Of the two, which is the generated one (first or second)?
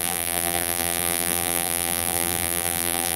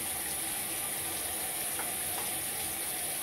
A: first